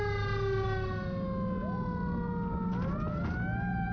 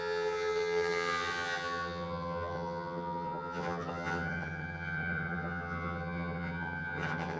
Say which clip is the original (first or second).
first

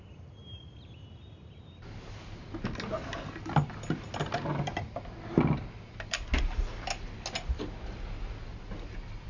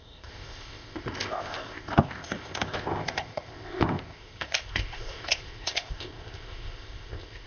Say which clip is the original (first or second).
first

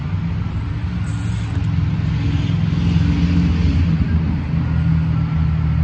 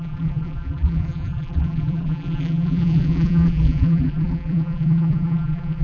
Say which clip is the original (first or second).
first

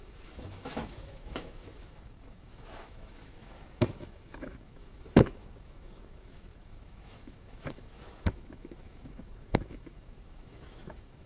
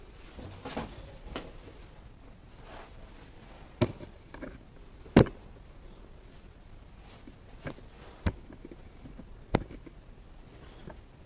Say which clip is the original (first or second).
second